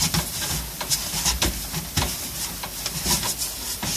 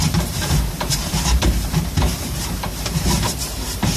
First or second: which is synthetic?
second